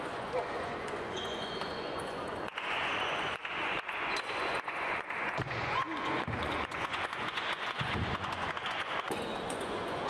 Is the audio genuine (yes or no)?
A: no